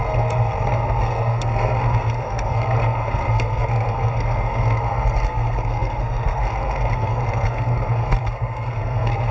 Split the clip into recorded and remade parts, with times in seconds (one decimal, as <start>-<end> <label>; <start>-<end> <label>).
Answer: 0.0-9.3 remade